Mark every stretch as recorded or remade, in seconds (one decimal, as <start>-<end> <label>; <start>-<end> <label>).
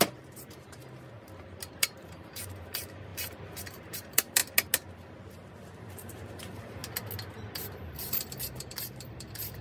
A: 0.0-0.8 remade; 0.8-1.7 recorded; 1.7-4.4 remade; 4.4-5.9 recorded; 5.9-6.8 remade; 6.8-7.5 recorded; 7.5-9.6 remade